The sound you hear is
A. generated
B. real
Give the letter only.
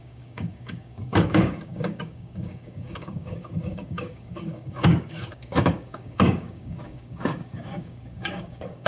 A